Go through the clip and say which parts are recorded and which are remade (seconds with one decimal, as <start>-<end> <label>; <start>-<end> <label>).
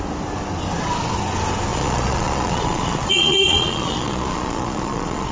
0.0-1.7 recorded; 1.7-5.3 remade